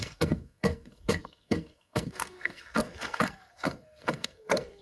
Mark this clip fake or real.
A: fake